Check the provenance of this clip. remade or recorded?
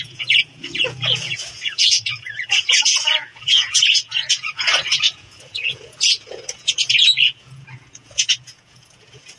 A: remade